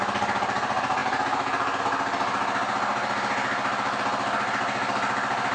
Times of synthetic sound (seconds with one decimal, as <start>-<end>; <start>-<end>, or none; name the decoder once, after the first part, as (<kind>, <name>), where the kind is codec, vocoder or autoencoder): 1.0-1.8 (vocoder, BigVGAN v2); 2.9-4.0